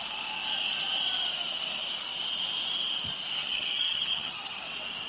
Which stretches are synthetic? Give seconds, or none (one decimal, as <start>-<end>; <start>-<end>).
3.4-4.6